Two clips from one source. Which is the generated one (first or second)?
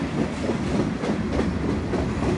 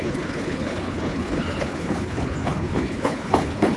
second